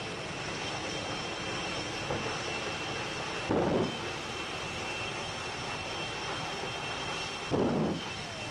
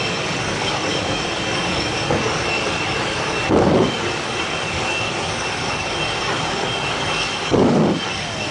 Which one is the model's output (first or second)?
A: second